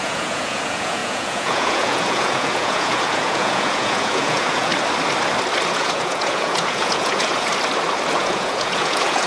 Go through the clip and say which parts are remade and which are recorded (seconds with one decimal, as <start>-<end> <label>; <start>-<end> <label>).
0.0-4.7 remade; 4.7-5.7 recorded; 5.7-7.5 remade; 7.5-8.1 recorded; 8.1-9.3 remade